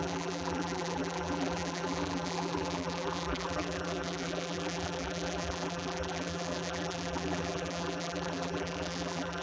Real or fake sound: fake